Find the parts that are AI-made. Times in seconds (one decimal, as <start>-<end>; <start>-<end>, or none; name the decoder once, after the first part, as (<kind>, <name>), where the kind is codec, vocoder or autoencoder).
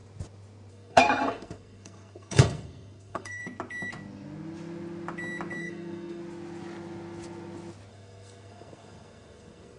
0.7-3.4 (codec, SNAC); 5.6-6.2; 7.9-9.8